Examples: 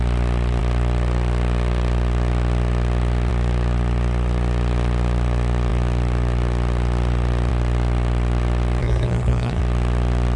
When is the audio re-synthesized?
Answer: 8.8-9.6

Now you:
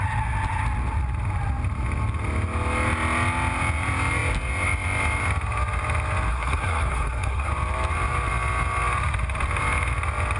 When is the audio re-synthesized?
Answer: 6.3-7.5